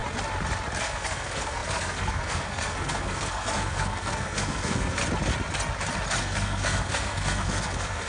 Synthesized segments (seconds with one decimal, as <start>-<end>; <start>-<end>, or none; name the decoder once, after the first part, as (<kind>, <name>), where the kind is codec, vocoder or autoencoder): 0.8-5.0 (codec, SNAC); 6.2-8.1